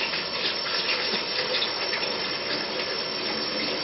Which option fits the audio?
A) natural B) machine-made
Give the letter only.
A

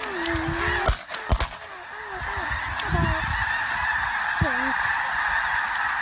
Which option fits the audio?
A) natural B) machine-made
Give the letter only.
A